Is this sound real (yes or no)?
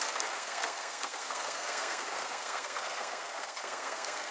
no